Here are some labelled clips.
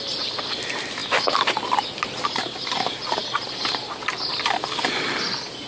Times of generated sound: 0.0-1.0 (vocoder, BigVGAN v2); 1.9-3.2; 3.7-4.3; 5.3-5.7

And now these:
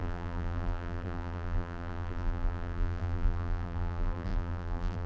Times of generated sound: 0.0-5.1 (vocoder, BigVGAN v2)

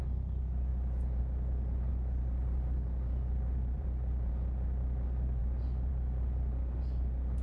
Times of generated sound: 0.7-1.2 (vocoder, BigVGAN v2); 1.9-4.3

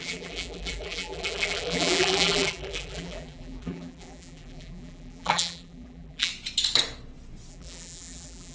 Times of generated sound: 0.0-6.3 (vocoder, BigVGAN v2); 7.5-8.5